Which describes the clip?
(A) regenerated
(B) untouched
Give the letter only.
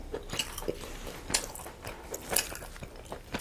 B